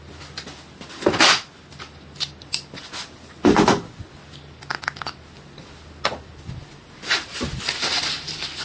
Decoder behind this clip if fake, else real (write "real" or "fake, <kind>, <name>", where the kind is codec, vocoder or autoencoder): real